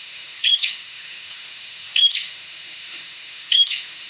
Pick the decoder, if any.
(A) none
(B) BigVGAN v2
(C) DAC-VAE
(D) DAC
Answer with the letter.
C